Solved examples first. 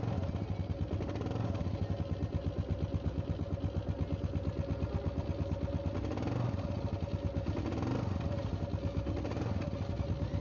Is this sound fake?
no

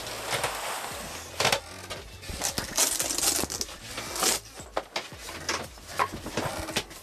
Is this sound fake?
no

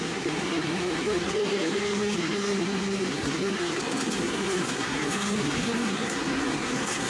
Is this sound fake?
yes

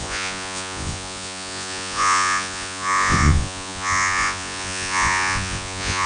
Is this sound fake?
yes